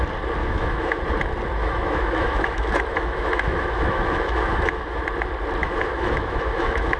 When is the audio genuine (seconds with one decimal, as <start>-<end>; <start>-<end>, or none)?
0.0-0.4; 1.0-1.6; 5.0-5.6